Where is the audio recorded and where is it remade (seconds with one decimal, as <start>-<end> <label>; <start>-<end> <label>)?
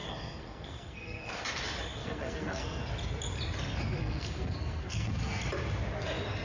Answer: 0.0-1.4 remade; 1.4-2.0 recorded; 2.0-2.8 remade; 2.8-4.0 recorded; 4.0-5.4 remade; 5.4-6.4 recorded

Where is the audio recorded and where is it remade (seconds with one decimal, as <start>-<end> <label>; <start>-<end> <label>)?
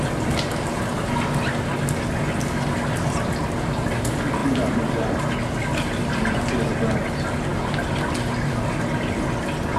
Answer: 0.0-9.8 recorded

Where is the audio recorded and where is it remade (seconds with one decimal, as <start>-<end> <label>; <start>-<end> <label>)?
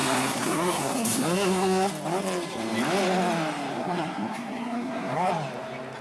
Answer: 0.0-1.9 remade; 1.9-3.7 recorded; 3.7-5.3 remade; 5.3-6.0 recorded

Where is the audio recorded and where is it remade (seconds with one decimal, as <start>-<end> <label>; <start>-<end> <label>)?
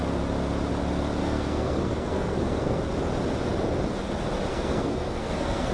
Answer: 0.0-1.2 recorded; 1.2-2.8 remade; 2.8-4.5 recorded; 4.5-5.7 remade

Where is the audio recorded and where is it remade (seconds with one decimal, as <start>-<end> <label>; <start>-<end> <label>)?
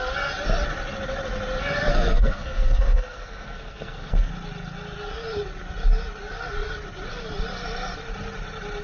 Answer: 0.0-1.9 recorded; 1.9-4.3 remade; 4.3-8.8 recorded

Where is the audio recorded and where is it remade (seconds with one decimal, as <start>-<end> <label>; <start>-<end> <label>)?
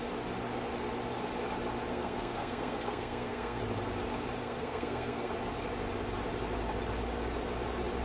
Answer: 0.0-1.9 recorded; 1.9-3.6 remade; 3.6-4.4 recorded; 4.4-5.3 remade; 5.3-8.0 recorded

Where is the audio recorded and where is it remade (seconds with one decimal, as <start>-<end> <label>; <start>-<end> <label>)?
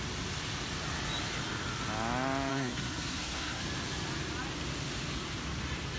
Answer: 0.0-2.5 recorded; 2.5-3.6 remade; 3.6-6.0 recorded